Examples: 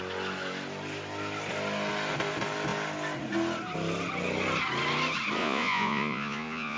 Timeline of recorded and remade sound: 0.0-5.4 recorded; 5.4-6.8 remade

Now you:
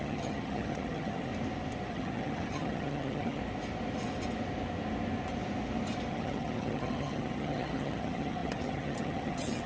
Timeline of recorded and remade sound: 0.0-1.3 remade; 1.3-1.9 recorded; 1.9-3.4 remade; 3.4-6.1 recorded; 6.1-9.7 remade

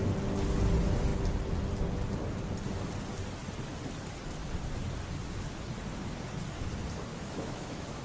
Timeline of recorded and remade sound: 0.0-7.1 recorded; 7.1-8.0 remade